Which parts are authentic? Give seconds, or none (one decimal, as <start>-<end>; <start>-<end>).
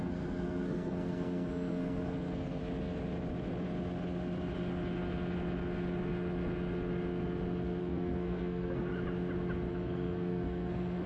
2.6-7.8; 8.9-9.7